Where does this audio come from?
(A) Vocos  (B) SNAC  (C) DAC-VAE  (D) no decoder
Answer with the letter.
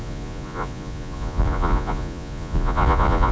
A